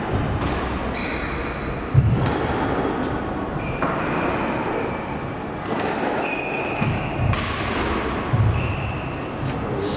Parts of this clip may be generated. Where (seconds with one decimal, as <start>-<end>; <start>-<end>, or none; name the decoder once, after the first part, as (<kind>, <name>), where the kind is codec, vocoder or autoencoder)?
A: 6.0-7.1 (autoencoder, DAC-VAE)